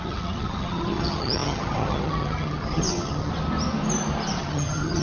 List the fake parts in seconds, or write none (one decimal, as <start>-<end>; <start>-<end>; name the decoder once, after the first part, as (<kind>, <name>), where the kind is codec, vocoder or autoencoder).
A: 0.0-3.3 (vocoder, HiFi-GAN); 4.4-5.0